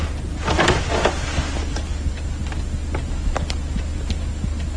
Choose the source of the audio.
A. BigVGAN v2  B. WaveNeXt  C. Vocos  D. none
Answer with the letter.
D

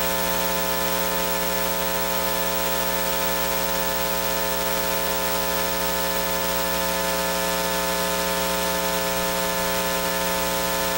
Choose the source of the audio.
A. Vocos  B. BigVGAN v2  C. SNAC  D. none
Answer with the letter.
D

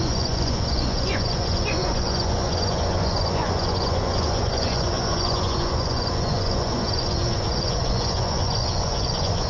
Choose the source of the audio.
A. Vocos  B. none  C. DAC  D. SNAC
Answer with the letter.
A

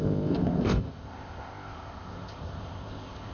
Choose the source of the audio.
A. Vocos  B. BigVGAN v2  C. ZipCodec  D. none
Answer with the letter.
C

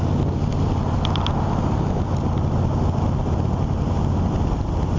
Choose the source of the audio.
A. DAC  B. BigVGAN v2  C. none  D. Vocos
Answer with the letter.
C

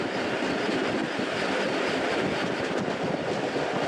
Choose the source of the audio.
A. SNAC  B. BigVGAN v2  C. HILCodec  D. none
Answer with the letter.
D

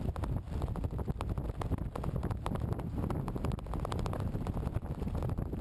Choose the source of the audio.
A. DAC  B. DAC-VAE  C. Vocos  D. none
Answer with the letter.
D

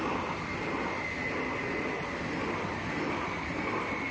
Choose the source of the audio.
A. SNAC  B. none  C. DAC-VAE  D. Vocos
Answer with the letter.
B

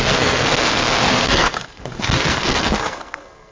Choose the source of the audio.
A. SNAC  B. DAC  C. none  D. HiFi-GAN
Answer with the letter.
A